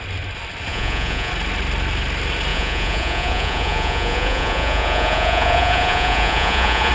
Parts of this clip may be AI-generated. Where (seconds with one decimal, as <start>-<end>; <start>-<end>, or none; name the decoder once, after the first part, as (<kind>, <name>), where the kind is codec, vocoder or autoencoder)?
0.7-1.3 (vocoder, Vocos); 2.5-6.9